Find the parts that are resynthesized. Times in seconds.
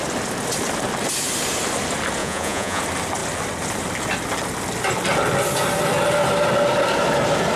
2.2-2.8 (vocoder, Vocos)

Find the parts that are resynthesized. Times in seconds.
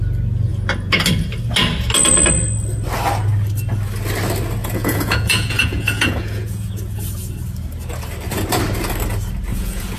4.6-7.0 (vocoder, Vocos); 9.5-10.0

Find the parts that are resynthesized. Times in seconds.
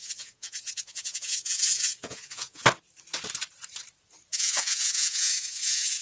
0.0-2.6 (vocoder, Vocos); 4.3-6.0